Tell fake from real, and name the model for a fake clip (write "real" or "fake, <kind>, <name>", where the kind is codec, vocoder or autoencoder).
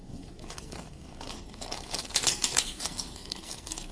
fake, codec, SNAC